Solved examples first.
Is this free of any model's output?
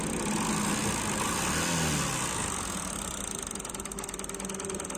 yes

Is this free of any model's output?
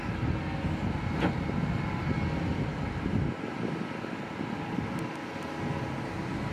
yes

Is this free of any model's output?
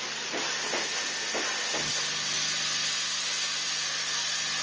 yes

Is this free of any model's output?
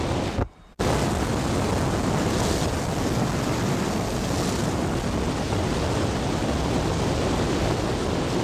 yes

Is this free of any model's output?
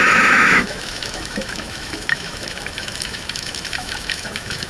no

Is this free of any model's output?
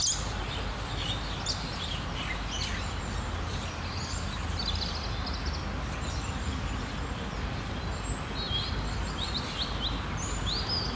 yes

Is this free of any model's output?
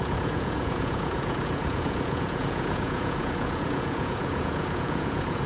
no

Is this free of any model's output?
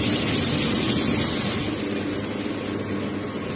yes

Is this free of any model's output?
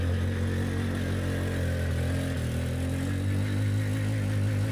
yes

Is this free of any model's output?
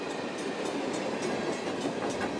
yes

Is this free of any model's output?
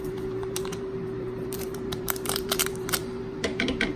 no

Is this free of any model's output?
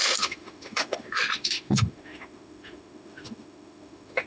no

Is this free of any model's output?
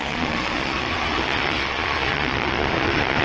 no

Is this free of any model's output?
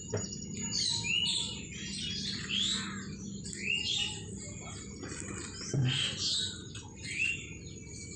yes